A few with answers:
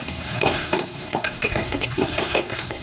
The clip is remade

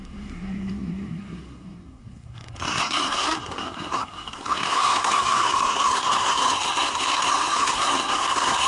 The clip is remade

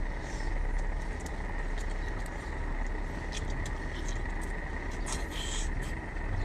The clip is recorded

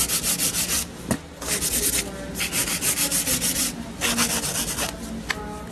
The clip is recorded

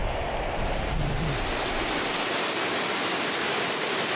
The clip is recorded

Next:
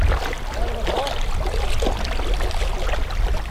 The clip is recorded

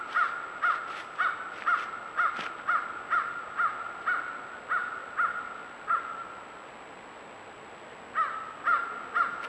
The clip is recorded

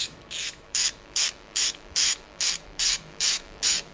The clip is remade